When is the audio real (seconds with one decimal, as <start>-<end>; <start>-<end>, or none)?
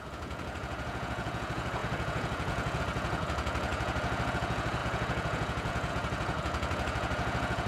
none